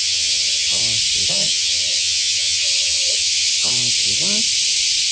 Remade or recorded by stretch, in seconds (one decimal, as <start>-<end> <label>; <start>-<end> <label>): 0.0-0.8 remade; 0.8-1.3 recorded; 1.3-3.7 remade; 3.7-5.1 recorded